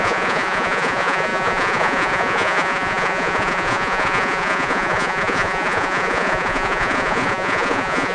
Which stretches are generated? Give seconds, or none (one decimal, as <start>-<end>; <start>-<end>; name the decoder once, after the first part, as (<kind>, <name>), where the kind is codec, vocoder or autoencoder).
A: 0.0-8.1 (vocoder, Vocos)

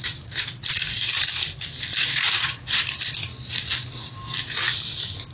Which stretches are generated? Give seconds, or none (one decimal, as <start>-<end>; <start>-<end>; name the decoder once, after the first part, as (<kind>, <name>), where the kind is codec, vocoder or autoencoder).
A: 2.0-2.8 (vocoder, Vocos)

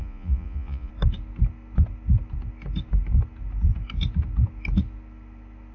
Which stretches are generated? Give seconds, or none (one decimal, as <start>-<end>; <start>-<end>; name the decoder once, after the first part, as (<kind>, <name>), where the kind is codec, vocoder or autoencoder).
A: 0.0-0.9 (vocoder, Vocos)

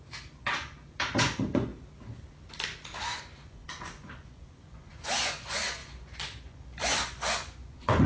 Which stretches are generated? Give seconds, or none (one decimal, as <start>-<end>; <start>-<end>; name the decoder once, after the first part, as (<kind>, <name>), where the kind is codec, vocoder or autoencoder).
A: 0.0-1.7 (vocoder, Vocos); 3.0-8.1

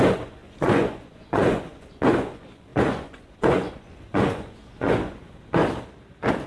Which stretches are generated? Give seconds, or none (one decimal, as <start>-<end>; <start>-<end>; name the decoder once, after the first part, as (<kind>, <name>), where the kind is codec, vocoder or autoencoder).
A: 0.0-5.6 (vocoder, Vocos)

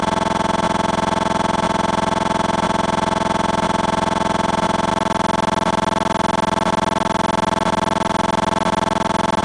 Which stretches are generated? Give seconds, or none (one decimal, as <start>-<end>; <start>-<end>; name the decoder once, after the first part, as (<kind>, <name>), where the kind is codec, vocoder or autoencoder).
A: 0.0-4.9 (vocoder, Vocos)